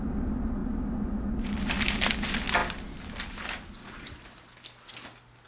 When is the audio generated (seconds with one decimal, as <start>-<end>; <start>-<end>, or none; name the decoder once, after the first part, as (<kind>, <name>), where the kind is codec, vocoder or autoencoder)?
none